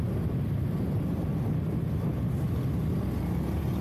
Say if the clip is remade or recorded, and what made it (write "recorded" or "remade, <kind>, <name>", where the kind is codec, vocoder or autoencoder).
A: recorded